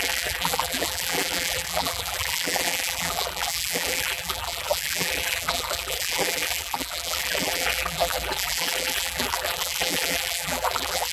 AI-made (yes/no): yes